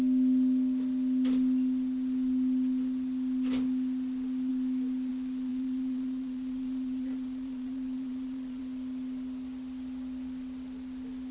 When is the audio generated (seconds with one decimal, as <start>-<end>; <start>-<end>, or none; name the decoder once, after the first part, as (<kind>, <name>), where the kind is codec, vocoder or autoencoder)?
5.5-8.6 (vocoder, Vocos)